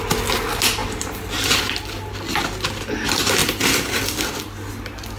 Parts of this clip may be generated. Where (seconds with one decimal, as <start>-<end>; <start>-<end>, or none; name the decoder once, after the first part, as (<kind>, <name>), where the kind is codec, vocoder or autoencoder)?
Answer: none